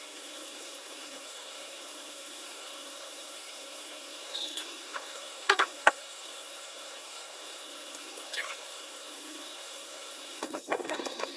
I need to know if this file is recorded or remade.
remade